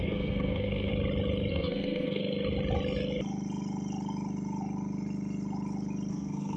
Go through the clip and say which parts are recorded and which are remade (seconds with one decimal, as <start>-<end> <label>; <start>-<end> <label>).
0.0-0.9 remade; 0.9-1.5 recorded; 1.5-2.2 remade; 2.2-6.1 recorded; 6.1-6.6 remade